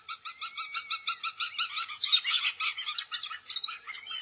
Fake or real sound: real